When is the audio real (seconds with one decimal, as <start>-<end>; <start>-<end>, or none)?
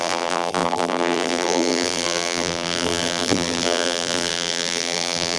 none